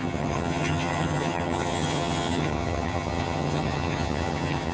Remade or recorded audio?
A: remade